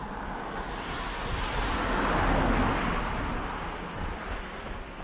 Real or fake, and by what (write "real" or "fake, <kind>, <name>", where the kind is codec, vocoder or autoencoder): real